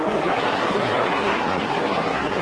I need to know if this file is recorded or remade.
remade